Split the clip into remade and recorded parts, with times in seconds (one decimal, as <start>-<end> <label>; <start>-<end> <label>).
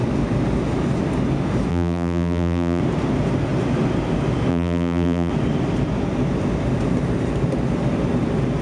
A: 0.0-1.7 recorded; 1.7-2.8 remade; 2.8-4.5 recorded; 4.5-5.3 remade; 5.3-8.6 recorded